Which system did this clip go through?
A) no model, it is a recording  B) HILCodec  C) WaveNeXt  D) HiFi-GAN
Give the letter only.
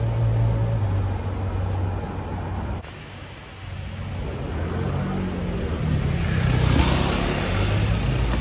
A